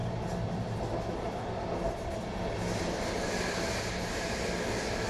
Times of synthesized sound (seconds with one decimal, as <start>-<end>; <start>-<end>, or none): none